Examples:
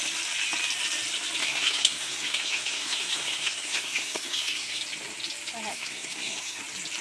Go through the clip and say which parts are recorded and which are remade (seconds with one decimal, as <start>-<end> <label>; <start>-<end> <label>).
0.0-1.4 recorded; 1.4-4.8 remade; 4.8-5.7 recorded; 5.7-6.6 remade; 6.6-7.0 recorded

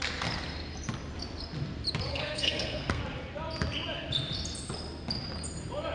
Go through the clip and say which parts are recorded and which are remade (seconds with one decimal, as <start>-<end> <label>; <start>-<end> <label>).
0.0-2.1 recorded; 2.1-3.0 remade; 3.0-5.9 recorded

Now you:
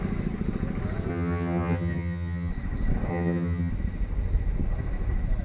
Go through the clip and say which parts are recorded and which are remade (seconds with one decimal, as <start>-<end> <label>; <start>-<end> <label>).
0.0-1.1 recorded; 1.1-2.5 remade; 2.5-3.1 recorded; 3.1-3.7 remade; 3.7-5.4 recorded